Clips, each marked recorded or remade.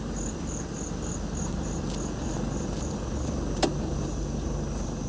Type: recorded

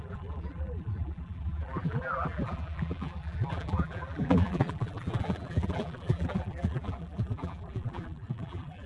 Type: remade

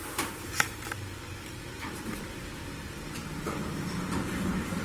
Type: remade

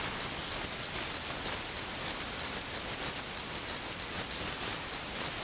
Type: recorded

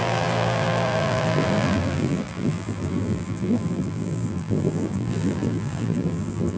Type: remade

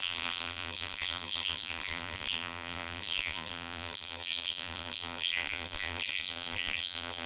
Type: remade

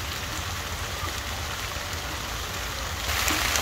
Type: recorded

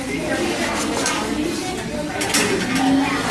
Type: recorded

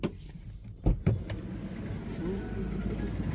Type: recorded